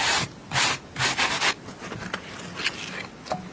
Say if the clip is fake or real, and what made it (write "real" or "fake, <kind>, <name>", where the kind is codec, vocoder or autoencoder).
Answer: real